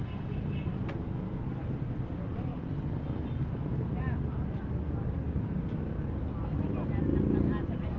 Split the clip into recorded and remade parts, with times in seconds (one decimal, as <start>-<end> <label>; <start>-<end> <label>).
0.0-8.0 recorded